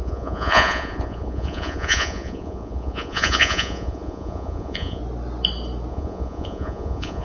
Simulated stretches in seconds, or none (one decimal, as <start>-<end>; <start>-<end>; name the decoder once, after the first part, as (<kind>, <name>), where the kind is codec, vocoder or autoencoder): 0.0-5.0 (vocoder, Vocos); 5.9-7.2